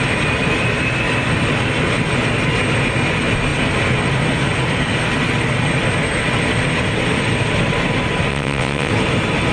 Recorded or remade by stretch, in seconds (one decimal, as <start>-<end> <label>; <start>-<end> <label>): 0.0-8.3 recorded; 8.3-8.9 remade; 8.9-9.5 recorded